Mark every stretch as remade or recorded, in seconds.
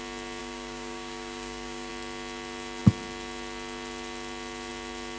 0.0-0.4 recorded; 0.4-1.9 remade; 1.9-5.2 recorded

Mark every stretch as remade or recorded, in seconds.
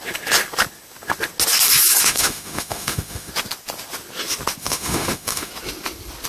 0.0-2.0 recorded; 2.0-3.3 remade; 3.3-4.6 recorded; 4.6-5.5 remade; 5.5-6.3 recorded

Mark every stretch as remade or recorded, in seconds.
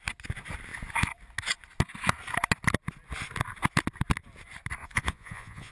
0.0-4.8 recorded; 4.8-5.7 remade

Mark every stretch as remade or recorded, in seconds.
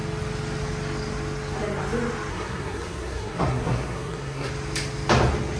0.0-2.3 recorded; 2.3-4.5 remade; 4.5-5.6 recorded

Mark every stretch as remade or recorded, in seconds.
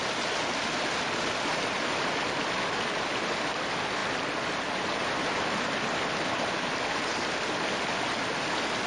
0.0-8.9 recorded